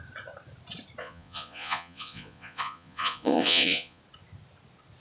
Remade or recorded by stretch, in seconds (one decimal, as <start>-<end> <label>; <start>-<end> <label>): 0.0-1.0 recorded; 1.0-4.0 remade; 4.0-5.0 recorded